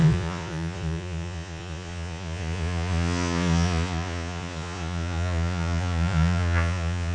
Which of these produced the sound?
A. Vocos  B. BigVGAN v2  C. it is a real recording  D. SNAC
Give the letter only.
A